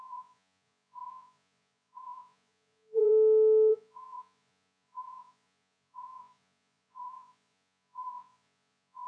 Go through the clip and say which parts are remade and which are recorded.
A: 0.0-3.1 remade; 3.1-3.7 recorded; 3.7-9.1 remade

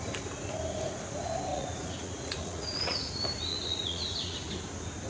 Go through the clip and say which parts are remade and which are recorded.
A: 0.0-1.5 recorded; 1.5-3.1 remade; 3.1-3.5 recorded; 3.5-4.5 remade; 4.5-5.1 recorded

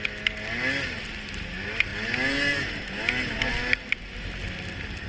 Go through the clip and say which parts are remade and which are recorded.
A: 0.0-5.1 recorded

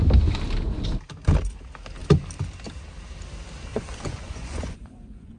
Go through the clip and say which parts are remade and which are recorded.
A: 0.0-3.7 recorded; 3.7-5.4 remade

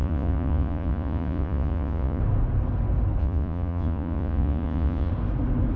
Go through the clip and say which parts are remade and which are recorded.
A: 0.0-2.2 remade; 2.2-3.2 recorded; 3.2-5.1 remade; 5.1-5.8 recorded